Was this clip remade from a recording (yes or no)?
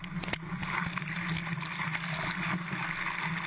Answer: no